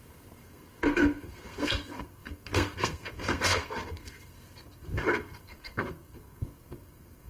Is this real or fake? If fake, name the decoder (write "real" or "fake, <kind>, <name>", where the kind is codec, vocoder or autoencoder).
fake, codec, SNAC